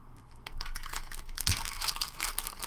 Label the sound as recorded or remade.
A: remade